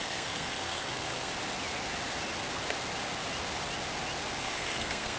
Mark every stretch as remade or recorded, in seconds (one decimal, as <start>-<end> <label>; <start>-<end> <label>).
0.0-1.3 remade; 1.3-4.4 recorded; 4.4-5.2 remade